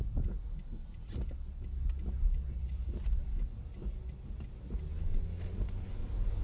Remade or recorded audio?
recorded